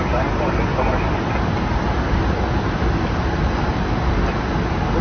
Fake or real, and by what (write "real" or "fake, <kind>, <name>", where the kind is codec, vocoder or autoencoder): real